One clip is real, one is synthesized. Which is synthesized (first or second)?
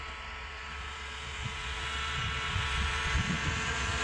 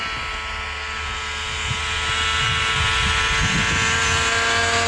first